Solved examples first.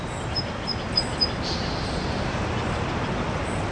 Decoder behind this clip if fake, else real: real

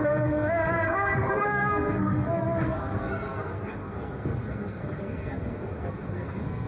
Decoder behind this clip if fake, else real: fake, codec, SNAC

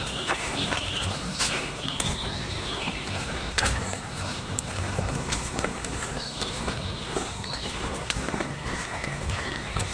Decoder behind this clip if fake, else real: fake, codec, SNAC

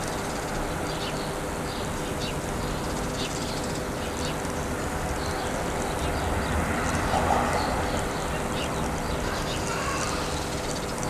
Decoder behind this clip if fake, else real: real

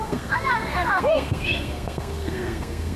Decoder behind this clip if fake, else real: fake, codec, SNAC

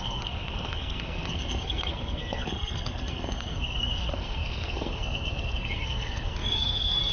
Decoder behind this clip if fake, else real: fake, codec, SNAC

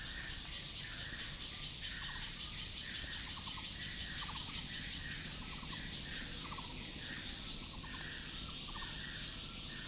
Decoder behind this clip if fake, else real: real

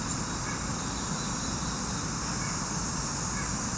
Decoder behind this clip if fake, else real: real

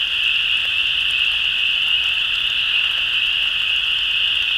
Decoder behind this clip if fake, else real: real